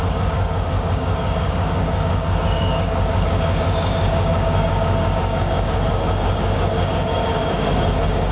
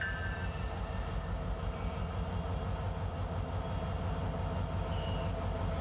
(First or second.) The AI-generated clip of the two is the first